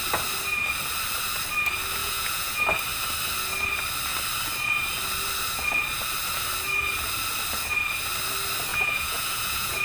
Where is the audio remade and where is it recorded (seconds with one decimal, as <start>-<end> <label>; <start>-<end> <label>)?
0.0-2.0 recorded; 2.0-2.6 remade; 2.6-8.7 recorded; 8.7-9.8 remade